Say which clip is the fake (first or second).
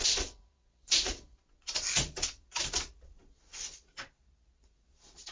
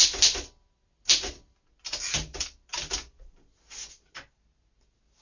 first